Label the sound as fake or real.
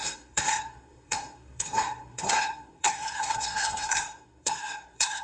fake